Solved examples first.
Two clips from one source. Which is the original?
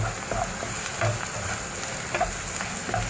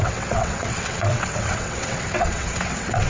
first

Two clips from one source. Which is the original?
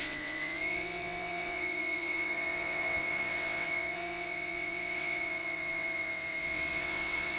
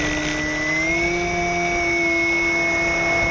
second